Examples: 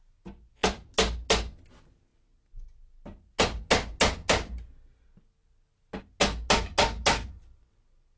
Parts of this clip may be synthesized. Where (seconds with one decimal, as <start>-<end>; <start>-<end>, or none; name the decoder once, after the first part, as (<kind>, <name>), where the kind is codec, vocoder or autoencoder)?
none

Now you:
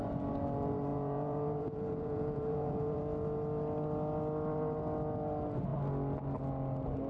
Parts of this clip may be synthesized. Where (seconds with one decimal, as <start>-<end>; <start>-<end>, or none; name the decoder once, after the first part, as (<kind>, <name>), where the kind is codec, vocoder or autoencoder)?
0.9-3.0 (vocoder, Vocos)

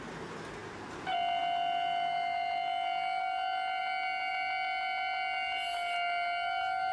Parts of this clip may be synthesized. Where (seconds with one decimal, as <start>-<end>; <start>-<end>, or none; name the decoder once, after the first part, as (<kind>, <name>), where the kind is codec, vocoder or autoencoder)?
none

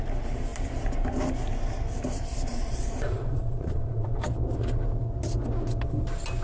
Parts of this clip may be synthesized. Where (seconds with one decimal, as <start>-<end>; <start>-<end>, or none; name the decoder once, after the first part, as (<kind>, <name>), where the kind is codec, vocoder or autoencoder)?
2.5-4.2 (vocoder, Vocos)

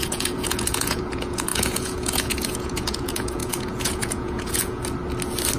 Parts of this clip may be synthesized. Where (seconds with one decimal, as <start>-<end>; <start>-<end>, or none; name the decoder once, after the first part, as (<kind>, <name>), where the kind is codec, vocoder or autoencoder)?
0.0-4.8 (vocoder, Vocos)

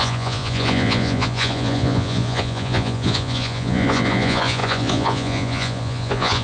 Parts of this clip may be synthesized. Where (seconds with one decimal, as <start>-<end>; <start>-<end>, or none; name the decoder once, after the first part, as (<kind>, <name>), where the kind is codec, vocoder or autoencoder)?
0.0-6.4 (vocoder, Vocos)

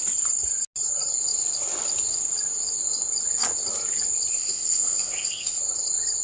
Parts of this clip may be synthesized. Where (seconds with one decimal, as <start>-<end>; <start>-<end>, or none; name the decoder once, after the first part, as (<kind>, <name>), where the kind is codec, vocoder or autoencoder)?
4.3-5.6 (codec, ZipCodec)

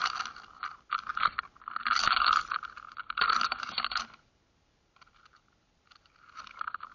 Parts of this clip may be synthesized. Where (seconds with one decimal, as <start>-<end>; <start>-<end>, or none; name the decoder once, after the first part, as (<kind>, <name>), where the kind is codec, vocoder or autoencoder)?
none